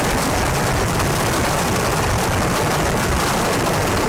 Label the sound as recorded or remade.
recorded